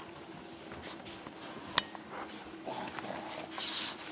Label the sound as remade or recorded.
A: recorded